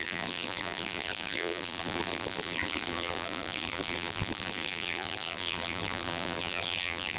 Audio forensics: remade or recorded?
remade